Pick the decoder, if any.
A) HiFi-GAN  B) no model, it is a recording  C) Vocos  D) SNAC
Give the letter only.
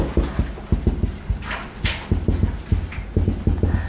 B